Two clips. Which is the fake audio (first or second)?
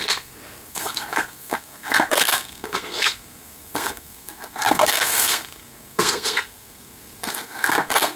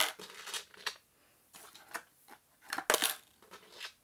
first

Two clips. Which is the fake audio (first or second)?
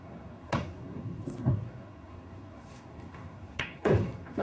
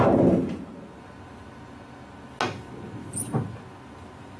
first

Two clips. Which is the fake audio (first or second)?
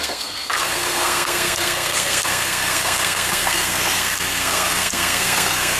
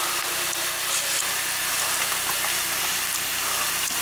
first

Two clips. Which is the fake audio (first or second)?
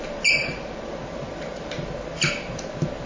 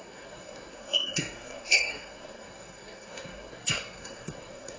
second